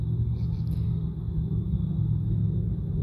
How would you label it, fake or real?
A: real